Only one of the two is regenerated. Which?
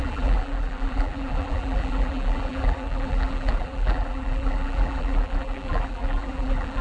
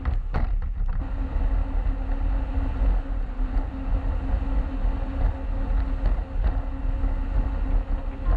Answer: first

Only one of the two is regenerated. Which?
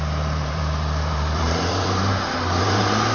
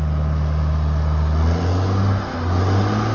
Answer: first